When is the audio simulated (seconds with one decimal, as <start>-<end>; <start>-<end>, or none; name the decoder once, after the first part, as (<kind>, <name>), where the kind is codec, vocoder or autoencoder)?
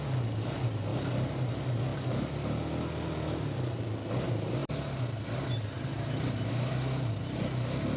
none